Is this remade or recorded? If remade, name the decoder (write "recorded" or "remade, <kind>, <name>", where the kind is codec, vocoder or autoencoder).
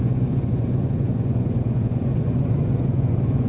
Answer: remade, vocoder, Vocos